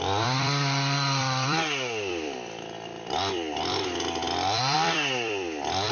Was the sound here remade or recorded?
remade